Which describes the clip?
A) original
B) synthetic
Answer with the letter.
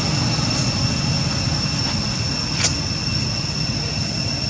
A